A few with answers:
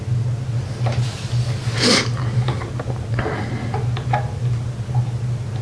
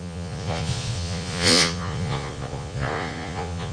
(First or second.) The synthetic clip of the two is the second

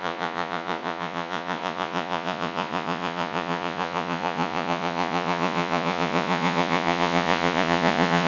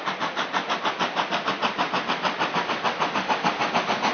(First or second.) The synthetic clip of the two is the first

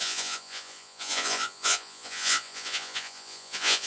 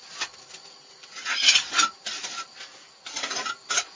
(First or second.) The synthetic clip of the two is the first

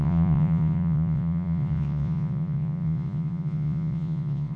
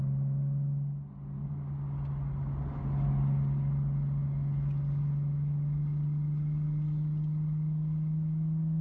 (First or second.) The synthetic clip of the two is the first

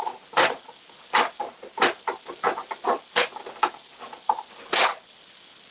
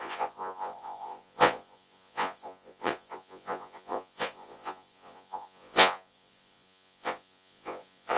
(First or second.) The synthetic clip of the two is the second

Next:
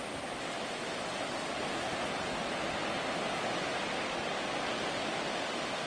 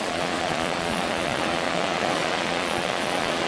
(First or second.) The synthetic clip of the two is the second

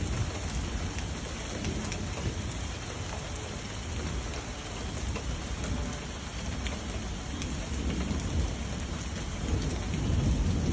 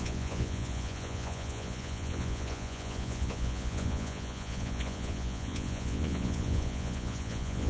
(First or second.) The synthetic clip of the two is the second